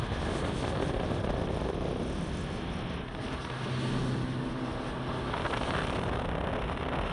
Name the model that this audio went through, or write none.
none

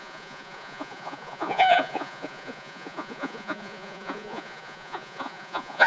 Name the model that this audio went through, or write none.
vocoder, Vocos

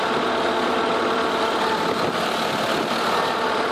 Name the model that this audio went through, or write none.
none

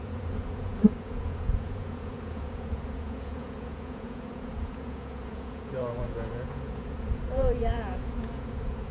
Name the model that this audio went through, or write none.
vocoder, Vocos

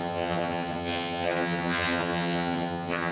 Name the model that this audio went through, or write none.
vocoder, HiFi-GAN